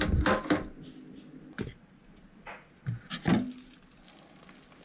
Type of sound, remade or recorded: recorded